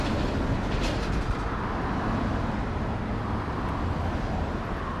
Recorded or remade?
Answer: recorded